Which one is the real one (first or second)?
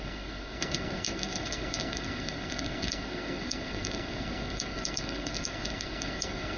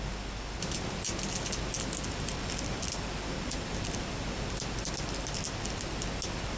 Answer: second